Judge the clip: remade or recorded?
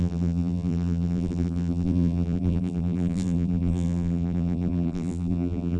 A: remade